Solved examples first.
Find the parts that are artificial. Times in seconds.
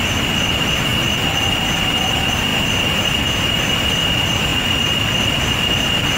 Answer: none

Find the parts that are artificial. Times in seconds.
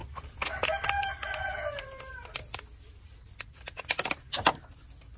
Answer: none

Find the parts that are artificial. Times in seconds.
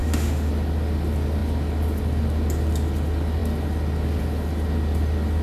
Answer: 0.0-0.5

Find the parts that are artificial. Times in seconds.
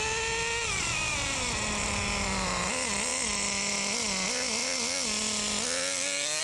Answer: none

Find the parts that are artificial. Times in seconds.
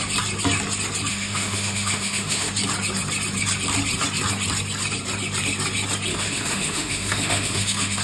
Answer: 1.1-2.5; 6.1-8.0